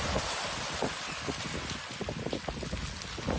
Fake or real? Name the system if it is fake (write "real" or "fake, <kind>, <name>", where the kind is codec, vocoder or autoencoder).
real